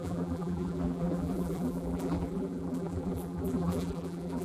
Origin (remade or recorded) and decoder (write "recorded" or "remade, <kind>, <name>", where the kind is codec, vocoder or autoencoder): remade, vocoder, BigVGAN v2